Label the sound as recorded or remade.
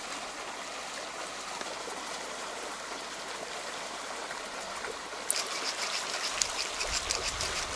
recorded